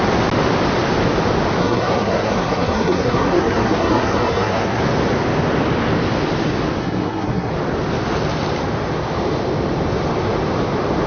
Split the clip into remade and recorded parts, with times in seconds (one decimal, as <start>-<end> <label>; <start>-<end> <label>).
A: 0.0-1.6 recorded; 1.6-4.8 remade; 4.8-6.8 recorded; 6.8-7.5 remade; 7.5-11.1 recorded